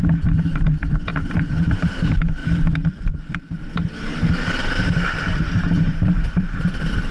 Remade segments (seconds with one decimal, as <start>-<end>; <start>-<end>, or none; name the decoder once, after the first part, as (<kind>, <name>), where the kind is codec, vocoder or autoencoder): 0.0-7.1 (vocoder, BigVGAN v2)